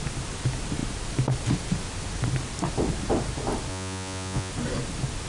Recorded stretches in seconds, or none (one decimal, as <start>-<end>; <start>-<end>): 0.0-3.7; 4.5-5.3